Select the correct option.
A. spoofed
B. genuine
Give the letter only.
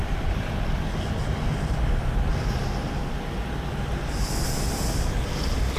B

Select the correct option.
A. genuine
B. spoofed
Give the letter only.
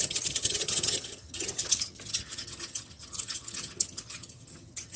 B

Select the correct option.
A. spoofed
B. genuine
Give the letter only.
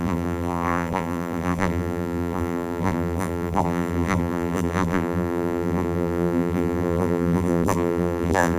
A